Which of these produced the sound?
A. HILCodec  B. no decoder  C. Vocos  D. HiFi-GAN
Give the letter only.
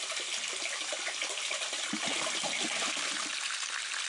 B